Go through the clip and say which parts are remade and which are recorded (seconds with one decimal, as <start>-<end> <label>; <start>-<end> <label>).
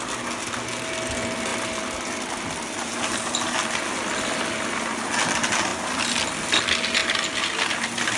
0.0-8.2 recorded